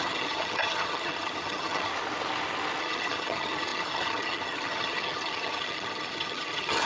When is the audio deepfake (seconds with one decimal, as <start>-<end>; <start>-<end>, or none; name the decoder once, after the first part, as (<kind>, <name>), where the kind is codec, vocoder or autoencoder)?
0.0-1.9 (vocoder, HiFi-GAN); 2.8-6.9